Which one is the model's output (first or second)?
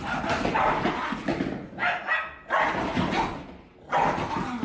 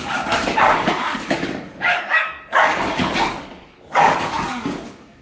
second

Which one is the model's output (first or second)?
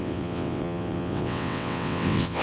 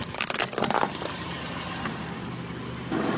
first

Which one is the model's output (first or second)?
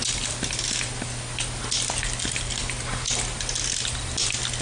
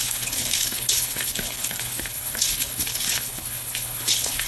second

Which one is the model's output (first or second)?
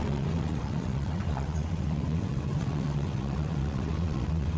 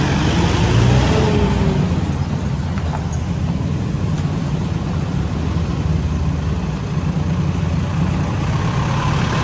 first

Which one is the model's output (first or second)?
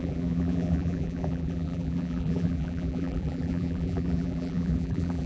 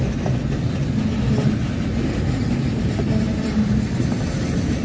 first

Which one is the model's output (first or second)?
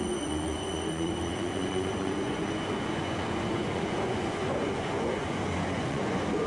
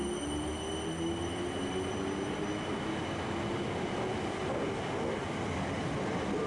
first